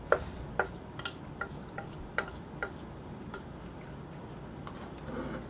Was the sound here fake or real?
real